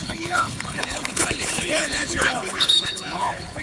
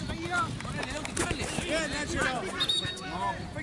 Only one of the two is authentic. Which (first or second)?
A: second